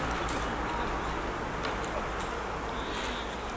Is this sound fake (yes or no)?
no